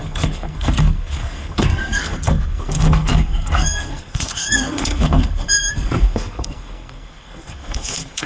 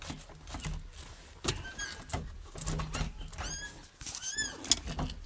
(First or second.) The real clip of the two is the second